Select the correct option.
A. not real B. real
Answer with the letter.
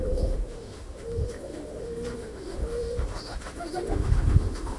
A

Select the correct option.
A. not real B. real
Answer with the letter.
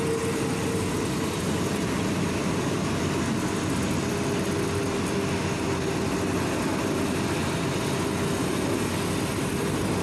B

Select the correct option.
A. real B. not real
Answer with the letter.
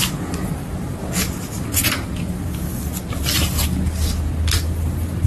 A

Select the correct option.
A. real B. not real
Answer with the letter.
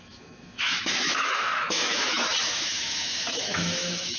B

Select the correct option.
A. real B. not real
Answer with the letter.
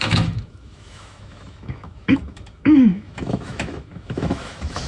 B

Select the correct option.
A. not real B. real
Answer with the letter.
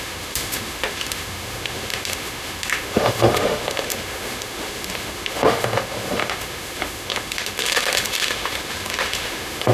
A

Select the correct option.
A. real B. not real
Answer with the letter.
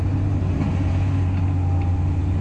A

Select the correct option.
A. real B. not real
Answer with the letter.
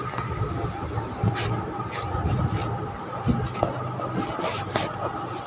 A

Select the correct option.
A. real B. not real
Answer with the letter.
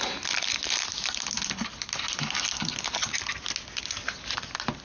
A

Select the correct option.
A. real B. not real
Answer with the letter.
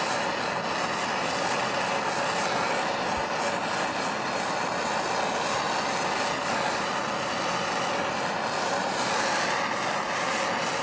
A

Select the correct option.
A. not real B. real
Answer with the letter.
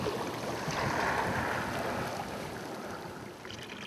B